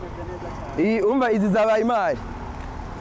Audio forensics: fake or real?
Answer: real